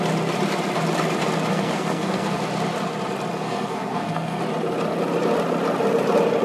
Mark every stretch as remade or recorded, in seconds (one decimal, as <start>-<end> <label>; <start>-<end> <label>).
0.0-1.5 recorded; 1.5-2.4 remade; 2.4-3.3 recorded; 3.3-4.4 remade; 4.4-6.4 recorded